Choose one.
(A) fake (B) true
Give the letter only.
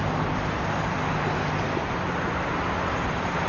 B